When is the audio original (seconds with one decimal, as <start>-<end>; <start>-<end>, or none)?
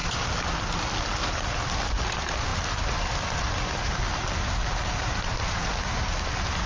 0.0-6.7